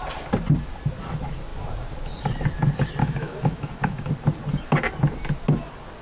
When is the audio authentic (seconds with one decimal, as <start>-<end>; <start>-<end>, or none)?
0.0-3.0; 4.1-6.0